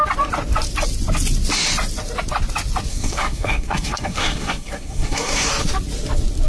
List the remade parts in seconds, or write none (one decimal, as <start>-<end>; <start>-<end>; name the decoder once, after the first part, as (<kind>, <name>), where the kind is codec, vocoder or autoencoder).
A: 2.9-5.5 (codec, SNAC)